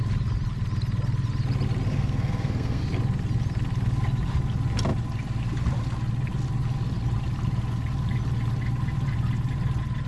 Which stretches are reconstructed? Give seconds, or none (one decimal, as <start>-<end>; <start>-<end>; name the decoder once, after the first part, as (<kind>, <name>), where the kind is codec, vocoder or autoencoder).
1.9-2.8 (codec, SNAC)

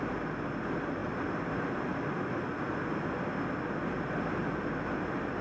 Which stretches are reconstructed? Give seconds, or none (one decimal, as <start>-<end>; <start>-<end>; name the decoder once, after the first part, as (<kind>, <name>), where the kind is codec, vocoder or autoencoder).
none

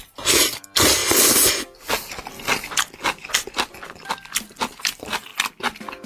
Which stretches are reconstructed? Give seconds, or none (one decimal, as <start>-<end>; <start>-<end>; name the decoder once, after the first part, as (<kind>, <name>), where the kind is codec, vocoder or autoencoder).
0.0-1.0 (vocoder, BigVGAN v2); 4.7-5.3

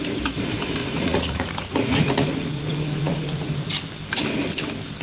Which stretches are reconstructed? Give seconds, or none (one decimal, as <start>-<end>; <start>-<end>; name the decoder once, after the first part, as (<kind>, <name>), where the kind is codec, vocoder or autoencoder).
0.8-3.7 (vocoder, Vocos)

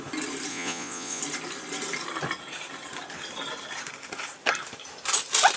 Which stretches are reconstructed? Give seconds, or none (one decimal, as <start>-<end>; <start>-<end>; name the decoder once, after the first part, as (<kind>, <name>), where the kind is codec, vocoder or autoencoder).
0.5-1.2 (vocoder, Vocos)

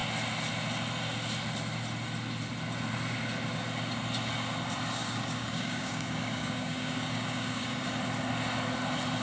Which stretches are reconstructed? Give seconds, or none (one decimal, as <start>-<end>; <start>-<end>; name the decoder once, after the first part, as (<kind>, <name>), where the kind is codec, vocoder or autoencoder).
5.0-7.9 (codec, DAC)

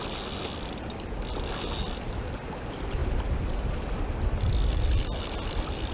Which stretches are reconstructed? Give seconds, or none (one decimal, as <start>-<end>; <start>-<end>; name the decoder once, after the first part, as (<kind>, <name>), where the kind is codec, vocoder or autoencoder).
3.0-4.2 (vocoder, BigVGAN v2)